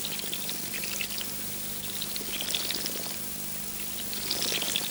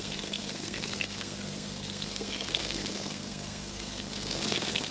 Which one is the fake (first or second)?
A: second